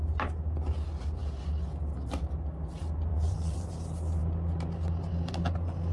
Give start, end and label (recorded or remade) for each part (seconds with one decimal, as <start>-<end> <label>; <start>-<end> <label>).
0.0-3.1 recorded; 3.1-3.7 remade; 3.7-5.9 recorded